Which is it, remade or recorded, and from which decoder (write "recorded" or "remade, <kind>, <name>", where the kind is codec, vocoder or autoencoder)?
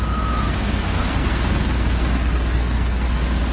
remade, codec, SNAC